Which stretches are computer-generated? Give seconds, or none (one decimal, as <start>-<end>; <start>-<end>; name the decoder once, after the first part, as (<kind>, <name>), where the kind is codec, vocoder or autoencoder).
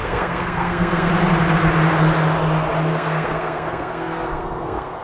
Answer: 0.0-1.1 (codec, SNAC); 2.9-5.0